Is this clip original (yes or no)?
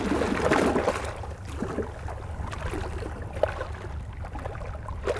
yes